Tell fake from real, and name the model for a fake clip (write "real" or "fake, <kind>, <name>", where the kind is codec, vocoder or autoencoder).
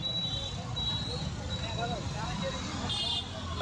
real